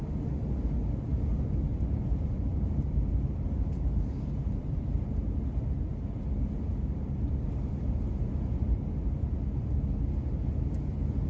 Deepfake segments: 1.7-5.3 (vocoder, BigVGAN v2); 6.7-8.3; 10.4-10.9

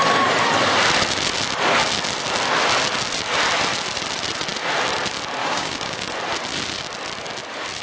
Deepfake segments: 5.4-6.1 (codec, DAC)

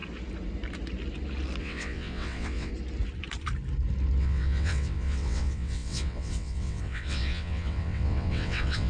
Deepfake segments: 1.6-2.7 (vocoder, WaveNeXt); 4.2-8.9

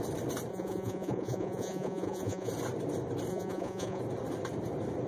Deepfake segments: 0.5-2.5 (vocoder, Vocos); 3.3-4.0

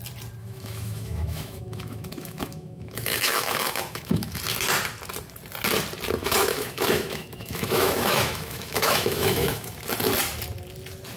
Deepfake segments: 0.4-4.4 (autoencoder, DAC-VAE); 6.2-9.8

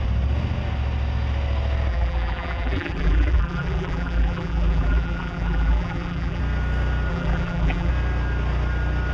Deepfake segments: 1.9-6.4 (vocoder, BigVGAN v2); 7.1-7.9

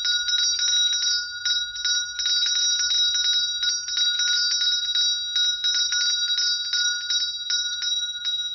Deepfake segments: none

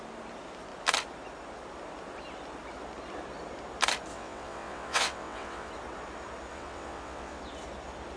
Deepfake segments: 4.1-5.7 (vocoder, WaveNeXt); 6.5-7.4